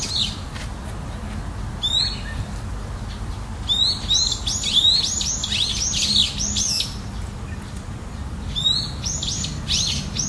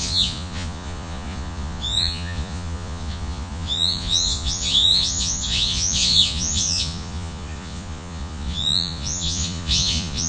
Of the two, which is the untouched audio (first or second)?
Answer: first